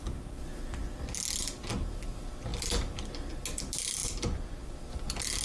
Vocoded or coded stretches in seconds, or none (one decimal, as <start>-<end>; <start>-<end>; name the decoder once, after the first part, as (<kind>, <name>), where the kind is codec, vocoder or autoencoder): none